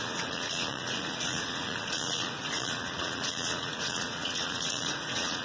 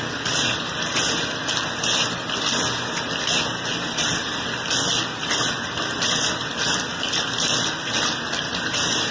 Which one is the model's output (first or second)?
first